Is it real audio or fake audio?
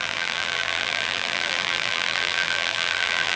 fake